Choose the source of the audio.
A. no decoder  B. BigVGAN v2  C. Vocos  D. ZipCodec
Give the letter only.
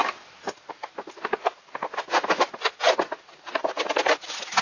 A